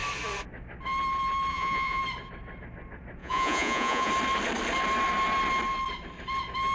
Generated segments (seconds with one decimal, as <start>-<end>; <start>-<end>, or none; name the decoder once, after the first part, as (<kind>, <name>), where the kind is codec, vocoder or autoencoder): 1.5-2.0 (vocoder, Vocos); 3.2-4.1